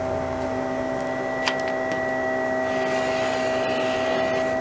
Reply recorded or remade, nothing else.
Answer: recorded